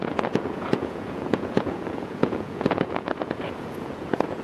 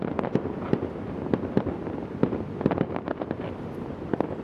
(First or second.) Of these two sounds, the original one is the second